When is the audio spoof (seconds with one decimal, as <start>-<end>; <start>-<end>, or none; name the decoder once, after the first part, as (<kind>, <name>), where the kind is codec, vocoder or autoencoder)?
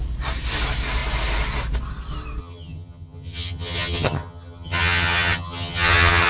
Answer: 2.4-6.3 (vocoder, HiFi-GAN)